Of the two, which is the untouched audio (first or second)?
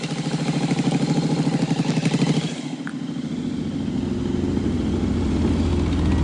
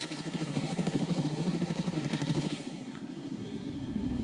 first